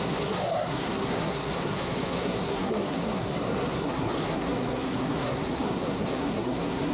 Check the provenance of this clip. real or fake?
fake